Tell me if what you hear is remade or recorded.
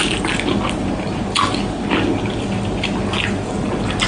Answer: recorded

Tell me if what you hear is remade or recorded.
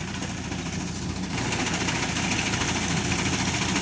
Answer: recorded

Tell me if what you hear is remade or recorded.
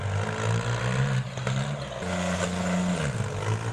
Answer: recorded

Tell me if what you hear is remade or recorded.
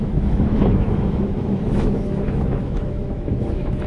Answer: remade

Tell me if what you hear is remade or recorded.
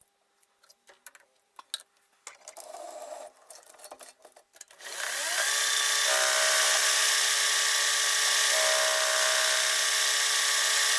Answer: recorded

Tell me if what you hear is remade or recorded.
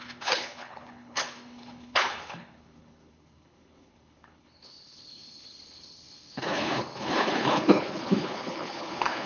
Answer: remade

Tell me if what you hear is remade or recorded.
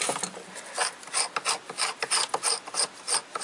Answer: recorded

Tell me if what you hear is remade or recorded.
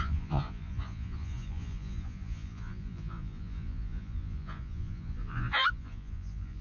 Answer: remade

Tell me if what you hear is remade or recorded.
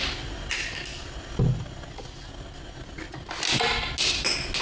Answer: recorded